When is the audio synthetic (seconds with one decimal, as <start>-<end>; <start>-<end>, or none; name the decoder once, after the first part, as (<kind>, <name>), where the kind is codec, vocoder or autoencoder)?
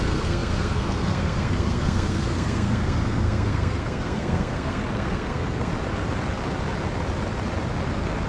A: 0.0-5.7 (codec, SNAC)